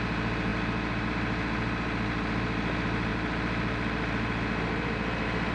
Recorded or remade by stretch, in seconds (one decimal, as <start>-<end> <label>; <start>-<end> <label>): 0.0-5.5 recorded